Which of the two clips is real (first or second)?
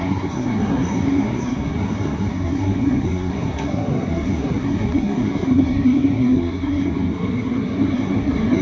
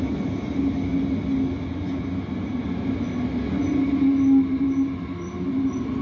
second